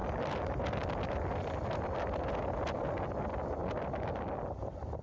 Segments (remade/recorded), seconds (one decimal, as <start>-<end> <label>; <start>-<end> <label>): 0.0-2.2 remade; 2.2-5.0 recorded